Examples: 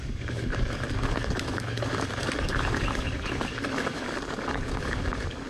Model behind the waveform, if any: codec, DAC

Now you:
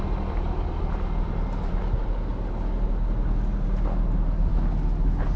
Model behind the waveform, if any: none